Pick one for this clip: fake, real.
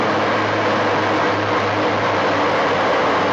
real